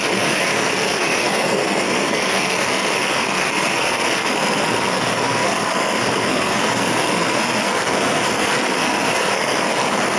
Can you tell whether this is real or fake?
fake